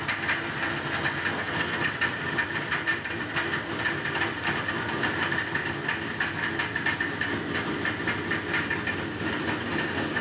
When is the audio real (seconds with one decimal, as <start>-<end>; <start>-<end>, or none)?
0.0-1.3; 1.9-10.2